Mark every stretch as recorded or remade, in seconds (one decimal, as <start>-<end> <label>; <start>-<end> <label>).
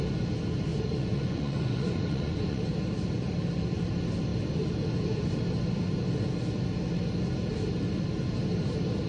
0.0-0.7 recorded; 0.7-2.6 remade; 2.6-9.1 recorded